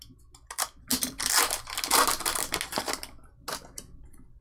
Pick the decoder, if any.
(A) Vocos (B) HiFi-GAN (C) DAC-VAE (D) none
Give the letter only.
D